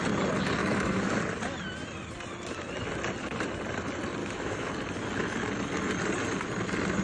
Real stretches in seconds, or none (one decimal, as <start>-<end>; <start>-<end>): 0.0-0.6; 1.2-4.2; 4.7-7.0